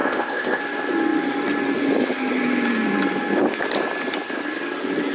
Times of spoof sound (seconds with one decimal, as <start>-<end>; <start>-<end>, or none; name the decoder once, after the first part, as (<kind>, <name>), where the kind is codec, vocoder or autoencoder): 0.0-0.6 (codec, ZipCodec)